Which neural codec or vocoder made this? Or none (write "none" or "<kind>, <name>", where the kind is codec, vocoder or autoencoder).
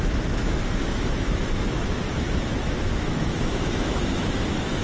autoencoder, DAC-VAE